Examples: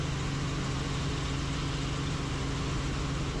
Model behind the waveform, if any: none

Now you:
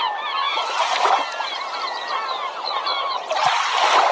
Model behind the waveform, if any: none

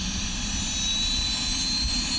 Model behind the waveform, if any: none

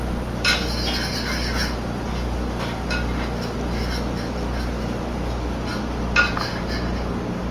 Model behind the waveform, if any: none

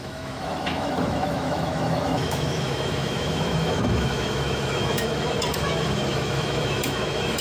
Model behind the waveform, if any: autoencoder, DAC-VAE